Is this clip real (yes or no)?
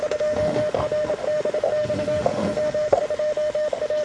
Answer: no